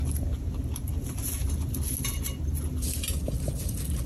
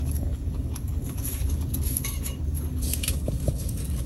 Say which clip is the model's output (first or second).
second